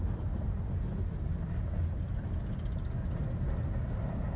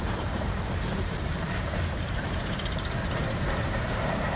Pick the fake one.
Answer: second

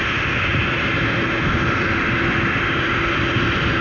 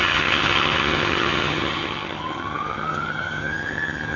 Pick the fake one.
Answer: second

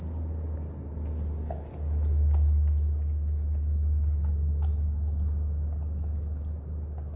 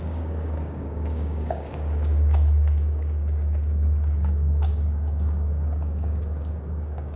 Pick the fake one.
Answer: second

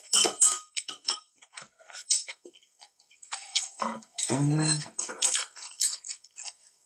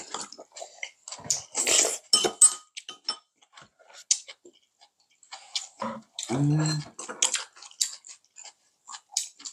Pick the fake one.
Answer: first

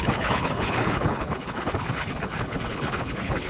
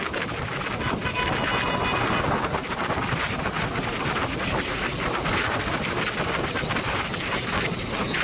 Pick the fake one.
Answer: first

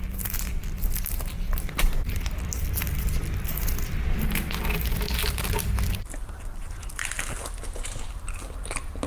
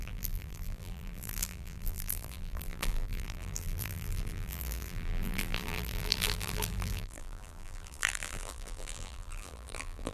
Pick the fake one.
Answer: second